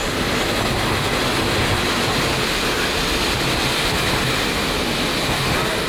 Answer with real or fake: real